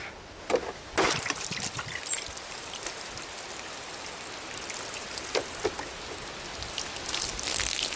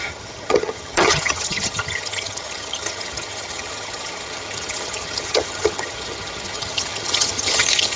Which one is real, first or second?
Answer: first